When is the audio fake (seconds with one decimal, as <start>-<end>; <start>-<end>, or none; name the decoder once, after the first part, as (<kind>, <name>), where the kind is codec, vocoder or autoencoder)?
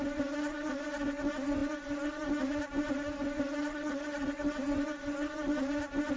3.6-4.6 (vocoder, WaveNeXt)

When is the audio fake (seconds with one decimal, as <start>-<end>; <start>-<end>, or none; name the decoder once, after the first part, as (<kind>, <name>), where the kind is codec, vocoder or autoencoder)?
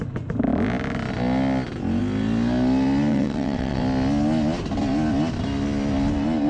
3.1-3.8 (vocoder, WaveNeXt)